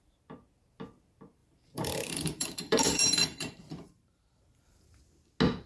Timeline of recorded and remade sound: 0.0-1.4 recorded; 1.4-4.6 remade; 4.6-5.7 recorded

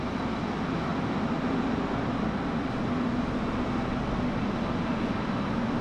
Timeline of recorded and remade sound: 0.0-5.8 recorded

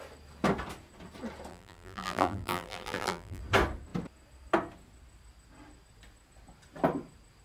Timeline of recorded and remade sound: 0.0-1.5 recorded; 1.5-3.4 remade; 3.4-7.4 recorded

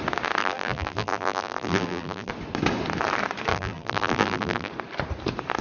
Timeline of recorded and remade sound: 0.0-0.4 recorded; 0.4-2.3 remade; 2.3-3.5 recorded; 3.5-4.7 remade; 4.7-5.6 recorded

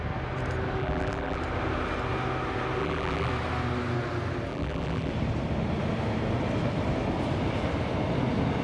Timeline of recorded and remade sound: 0.0-0.8 recorded; 0.8-1.4 remade; 1.4-2.8 recorded; 2.8-3.3 remade; 3.3-4.5 recorded; 4.5-5.1 remade; 5.1-8.6 recorded

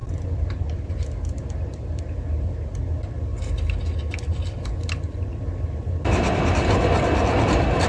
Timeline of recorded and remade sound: 0.0-2.0 remade; 2.0-7.9 recorded

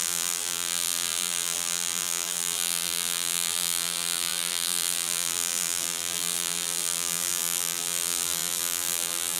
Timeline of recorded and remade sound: 0.0-9.4 remade